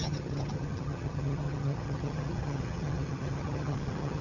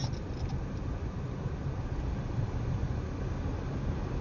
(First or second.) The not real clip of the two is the first